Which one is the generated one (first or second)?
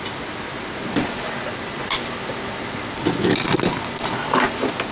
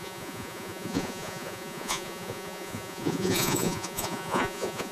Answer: second